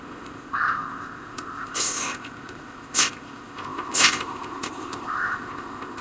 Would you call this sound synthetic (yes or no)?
yes